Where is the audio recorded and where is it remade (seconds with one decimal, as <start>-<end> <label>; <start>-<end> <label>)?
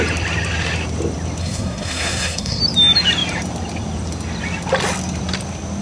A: 0.0-1.4 recorded; 1.4-2.6 remade; 2.6-5.8 recorded